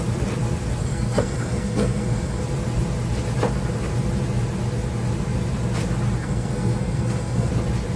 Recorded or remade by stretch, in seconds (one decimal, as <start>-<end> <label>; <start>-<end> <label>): 0.0-0.8 recorded; 0.8-2.4 remade; 2.4-6.2 recorded; 6.2-7.5 remade; 7.5-8.0 recorded